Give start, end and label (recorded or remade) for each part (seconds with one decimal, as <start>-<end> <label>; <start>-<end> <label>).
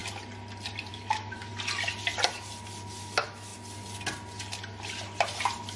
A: 0.0-0.9 recorded; 0.9-1.5 remade; 1.5-3.0 recorded; 3.0-3.5 remade; 3.5-5.8 recorded